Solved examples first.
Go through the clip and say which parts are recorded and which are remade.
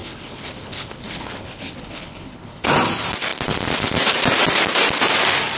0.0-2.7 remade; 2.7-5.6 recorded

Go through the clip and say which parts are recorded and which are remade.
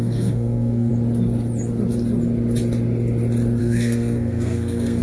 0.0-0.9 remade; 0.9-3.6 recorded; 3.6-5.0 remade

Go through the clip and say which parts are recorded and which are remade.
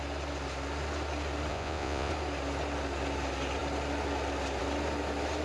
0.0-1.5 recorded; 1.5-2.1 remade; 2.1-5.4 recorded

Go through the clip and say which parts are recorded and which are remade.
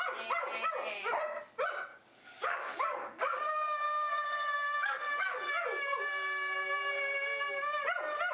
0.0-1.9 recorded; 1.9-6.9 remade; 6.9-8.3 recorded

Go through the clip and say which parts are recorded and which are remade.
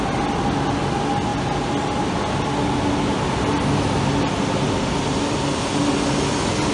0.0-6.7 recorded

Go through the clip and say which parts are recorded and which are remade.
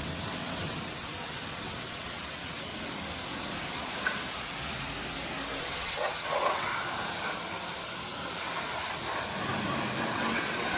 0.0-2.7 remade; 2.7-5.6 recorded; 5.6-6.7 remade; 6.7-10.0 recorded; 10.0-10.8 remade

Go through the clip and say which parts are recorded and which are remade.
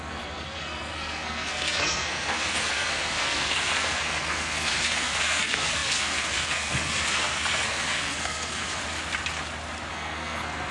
0.0-8.8 remade; 8.8-9.9 recorded; 9.9-10.7 remade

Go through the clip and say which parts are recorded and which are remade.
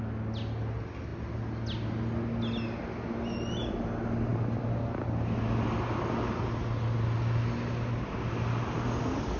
0.0-9.4 recorded